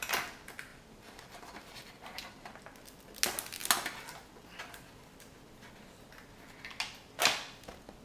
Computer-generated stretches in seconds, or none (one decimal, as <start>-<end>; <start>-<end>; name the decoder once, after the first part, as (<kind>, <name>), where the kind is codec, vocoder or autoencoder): 0.7-2.6 (vocoder, BigVGAN v2)